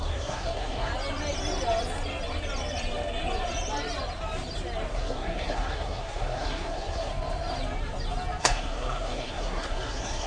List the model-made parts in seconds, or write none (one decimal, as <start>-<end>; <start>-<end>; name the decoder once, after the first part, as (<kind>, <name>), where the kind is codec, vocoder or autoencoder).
0.0-0.9 (codec, SNAC); 4.9-7.1; 8.4-10.3